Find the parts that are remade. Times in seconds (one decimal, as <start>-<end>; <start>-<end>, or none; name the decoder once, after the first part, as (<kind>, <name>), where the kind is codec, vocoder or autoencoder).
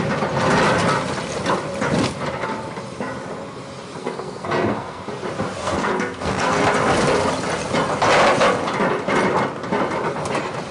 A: 4.0-5.0 (codec, SNAC); 5.6-6.6